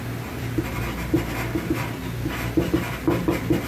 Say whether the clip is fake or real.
real